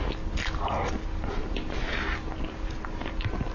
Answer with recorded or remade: recorded